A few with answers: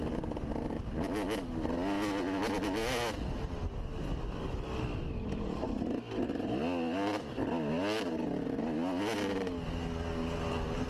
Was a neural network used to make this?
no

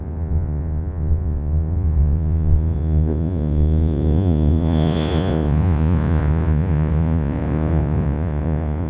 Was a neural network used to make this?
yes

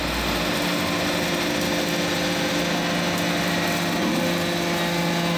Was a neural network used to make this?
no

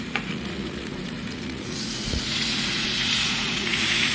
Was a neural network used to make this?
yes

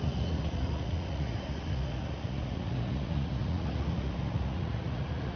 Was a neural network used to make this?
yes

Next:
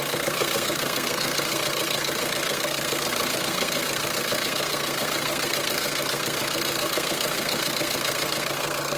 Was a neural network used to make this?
yes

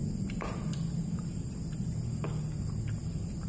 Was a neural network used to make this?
no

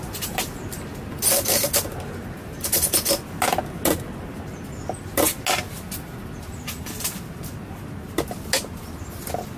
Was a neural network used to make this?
no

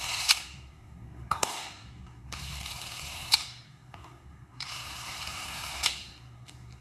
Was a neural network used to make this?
yes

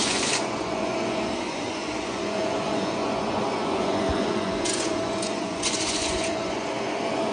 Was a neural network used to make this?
yes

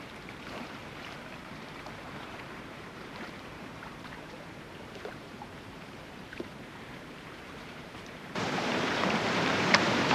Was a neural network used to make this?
yes